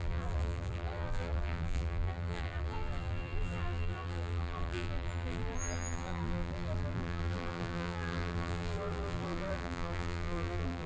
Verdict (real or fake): fake